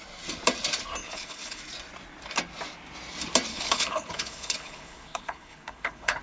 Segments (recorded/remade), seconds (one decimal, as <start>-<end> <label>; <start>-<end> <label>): 0.0-1.0 recorded; 1.0-1.6 remade; 1.6-3.5 recorded; 3.5-6.2 remade